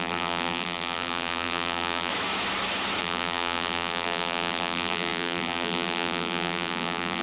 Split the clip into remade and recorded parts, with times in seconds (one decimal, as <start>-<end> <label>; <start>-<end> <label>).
0.0-2.1 remade; 2.1-3.0 recorded; 3.0-7.2 remade